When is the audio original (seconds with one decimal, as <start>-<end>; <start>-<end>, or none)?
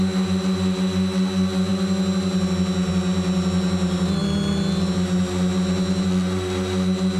0.0-7.2